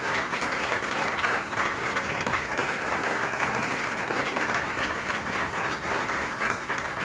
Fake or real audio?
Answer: fake